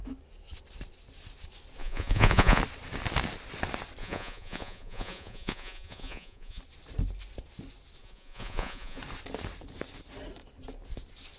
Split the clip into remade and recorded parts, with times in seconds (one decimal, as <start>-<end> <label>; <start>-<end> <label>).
0.0-1.8 recorded; 1.8-2.6 remade; 2.6-4.0 recorded; 4.0-6.6 remade; 6.6-8.0 recorded; 8.0-9.0 remade; 9.0-11.4 recorded